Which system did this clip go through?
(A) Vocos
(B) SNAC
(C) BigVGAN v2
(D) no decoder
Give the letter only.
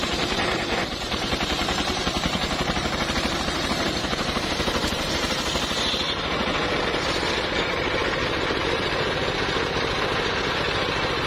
C